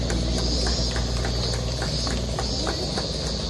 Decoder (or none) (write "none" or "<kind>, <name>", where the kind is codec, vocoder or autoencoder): none